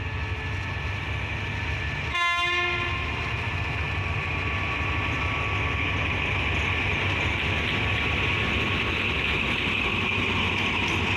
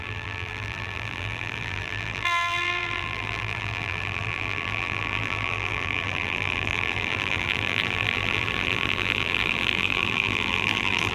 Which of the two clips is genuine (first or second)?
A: first